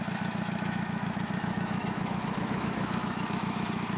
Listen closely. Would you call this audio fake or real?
fake